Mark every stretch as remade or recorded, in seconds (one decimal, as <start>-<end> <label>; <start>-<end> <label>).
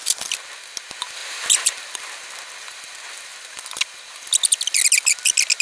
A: 0.0-5.6 recorded